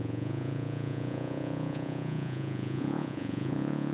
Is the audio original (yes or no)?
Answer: no